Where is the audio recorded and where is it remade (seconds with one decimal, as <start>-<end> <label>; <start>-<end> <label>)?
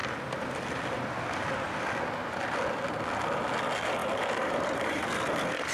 0.0-4.0 recorded; 4.0-5.0 remade; 5.0-5.7 recorded